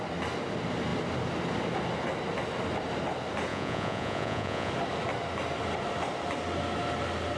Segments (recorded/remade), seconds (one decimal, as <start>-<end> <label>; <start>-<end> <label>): 0.0-3.5 recorded; 3.5-4.7 remade; 4.7-7.4 recorded